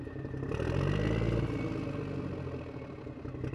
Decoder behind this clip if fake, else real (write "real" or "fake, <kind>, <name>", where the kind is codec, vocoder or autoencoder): real